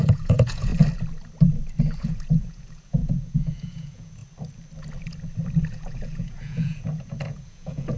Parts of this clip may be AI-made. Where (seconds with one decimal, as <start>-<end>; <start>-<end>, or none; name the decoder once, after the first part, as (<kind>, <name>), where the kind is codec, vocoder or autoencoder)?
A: 0.0-0.7 (vocoder, Vocos); 1.8-4.2; 5.7-8.0